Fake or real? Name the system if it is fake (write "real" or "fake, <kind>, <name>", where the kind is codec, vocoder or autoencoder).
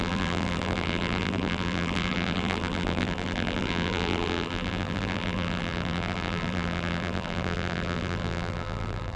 fake, vocoder, BigVGAN v2